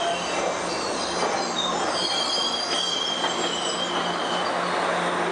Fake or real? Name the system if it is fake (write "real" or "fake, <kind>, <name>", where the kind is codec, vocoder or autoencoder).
real